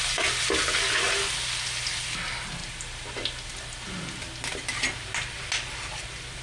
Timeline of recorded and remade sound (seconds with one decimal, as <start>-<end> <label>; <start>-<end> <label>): 0.0-2.6 recorded; 2.6-3.1 remade; 3.1-6.4 recorded